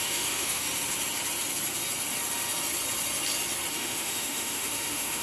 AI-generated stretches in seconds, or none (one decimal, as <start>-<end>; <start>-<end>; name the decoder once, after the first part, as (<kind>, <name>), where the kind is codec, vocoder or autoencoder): 0.0-0.6 (autoencoder, DAC-VAE); 3.7-5.2